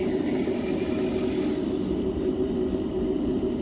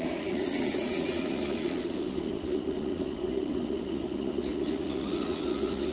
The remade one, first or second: second